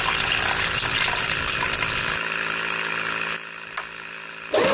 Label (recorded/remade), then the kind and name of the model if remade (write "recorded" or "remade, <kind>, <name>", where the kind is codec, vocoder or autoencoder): recorded